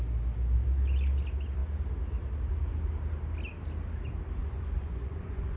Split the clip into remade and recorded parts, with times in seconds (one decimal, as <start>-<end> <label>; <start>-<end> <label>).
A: 0.0-4.4 recorded; 4.4-5.6 remade